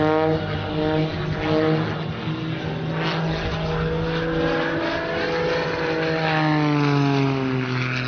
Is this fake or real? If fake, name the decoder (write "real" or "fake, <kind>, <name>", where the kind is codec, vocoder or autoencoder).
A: real